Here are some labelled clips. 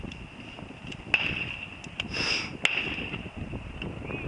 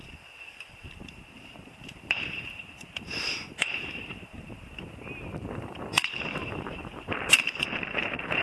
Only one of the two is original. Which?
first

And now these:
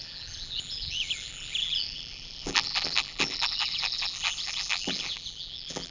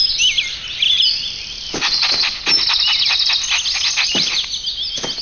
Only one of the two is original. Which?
second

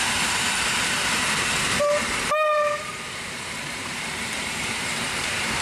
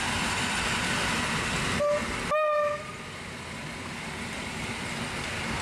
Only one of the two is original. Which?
second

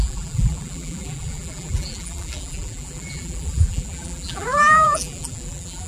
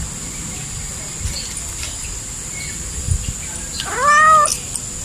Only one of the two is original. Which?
second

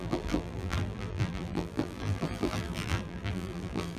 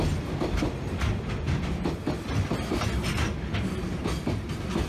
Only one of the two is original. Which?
second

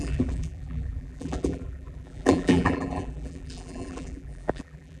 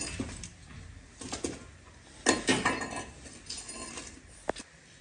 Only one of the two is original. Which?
second